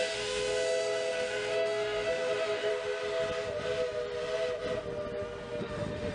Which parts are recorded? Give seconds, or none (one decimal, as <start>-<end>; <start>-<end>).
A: 2.7-5.6